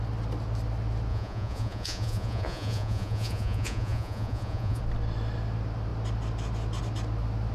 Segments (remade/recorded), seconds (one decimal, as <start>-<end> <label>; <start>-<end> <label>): 0.0-1.1 recorded; 1.1-4.8 remade; 4.8-7.5 recorded

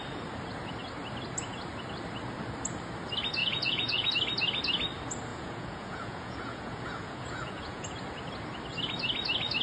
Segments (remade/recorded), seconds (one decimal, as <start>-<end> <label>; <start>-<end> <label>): 0.0-3.4 recorded; 3.4-4.1 remade; 4.1-5.3 recorded; 5.3-7.9 remade; 7.9-9.6 recorded